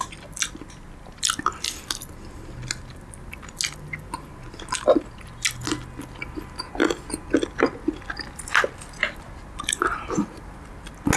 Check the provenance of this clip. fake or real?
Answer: real